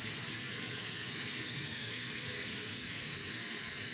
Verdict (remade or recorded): remade